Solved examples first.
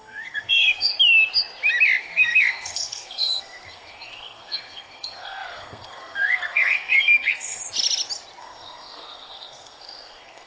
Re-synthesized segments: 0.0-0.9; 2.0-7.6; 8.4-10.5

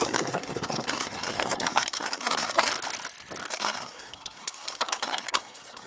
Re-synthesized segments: 0.0-2.7; 3.5-5.9